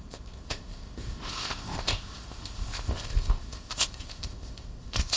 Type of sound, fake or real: fake